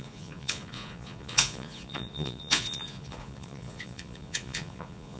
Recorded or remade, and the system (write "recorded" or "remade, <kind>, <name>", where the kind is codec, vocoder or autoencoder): remade, vocoder, Vocos